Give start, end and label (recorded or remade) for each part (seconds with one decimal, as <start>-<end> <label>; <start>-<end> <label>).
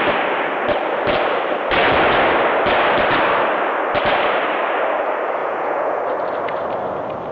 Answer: 0.0-5.4 recorded; 5.4-6.0 remade; 6.0-7.3 recorded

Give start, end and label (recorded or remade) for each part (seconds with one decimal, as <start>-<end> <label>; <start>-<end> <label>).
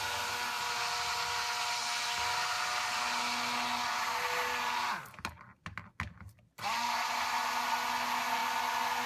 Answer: 0.0-9.1 recorded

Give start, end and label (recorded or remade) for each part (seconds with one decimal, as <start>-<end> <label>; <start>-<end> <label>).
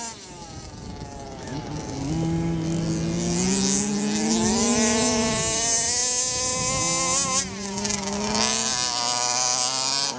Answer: 0.0-10.2 recorded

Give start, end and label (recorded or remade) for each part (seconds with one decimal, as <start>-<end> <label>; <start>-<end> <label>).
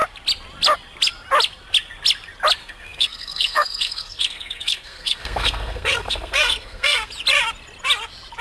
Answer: 0.0-2.6 recorded; 2.6-7.1 remade; 7.1-8.4 recorded